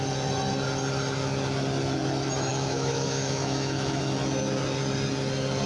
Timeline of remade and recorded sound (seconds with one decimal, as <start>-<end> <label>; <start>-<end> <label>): 0.0-2.5 recorded; 2.5-4.0 remade; 4.0-5.7 recorded